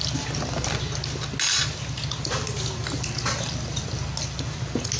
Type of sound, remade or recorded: recorded